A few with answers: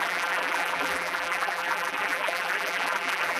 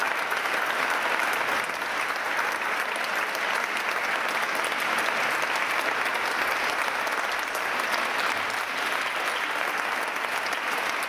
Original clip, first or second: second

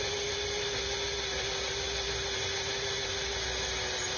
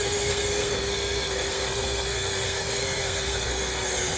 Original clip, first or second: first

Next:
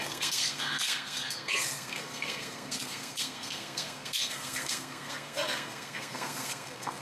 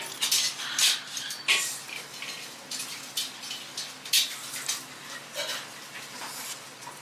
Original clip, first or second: second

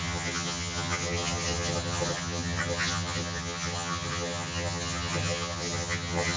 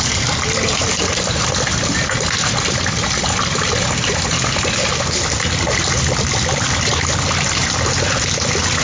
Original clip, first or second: second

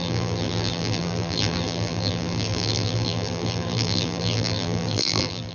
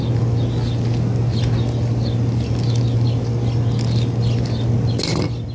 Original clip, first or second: second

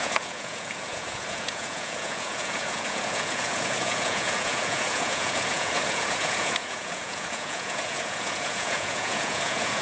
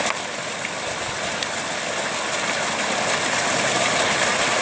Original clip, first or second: second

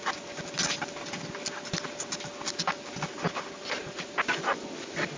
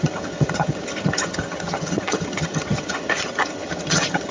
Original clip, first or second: first